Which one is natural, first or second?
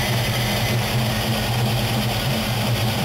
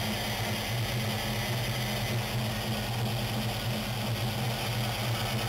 second